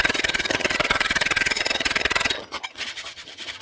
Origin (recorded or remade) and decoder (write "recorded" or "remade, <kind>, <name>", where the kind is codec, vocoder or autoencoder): remade, vocoder, HiFi-GAN